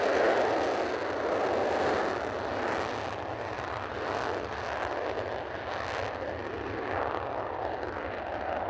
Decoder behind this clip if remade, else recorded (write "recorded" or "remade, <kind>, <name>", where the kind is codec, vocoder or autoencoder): recorded